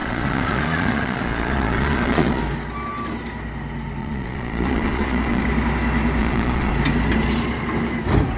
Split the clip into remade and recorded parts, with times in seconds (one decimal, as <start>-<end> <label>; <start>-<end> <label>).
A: 0.0-2.4 remade; 2.4-4.0 recorded; 4.0-5.4 remade; 5.4-6.2 recorded; 6.2-6.7 remade; 6.7-8.4 recorded